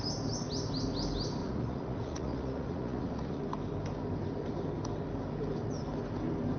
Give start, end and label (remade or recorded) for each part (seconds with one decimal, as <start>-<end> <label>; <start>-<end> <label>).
0.0-1.4 recorded; 1.4-3.4 remade; 3.4-6.6 recorded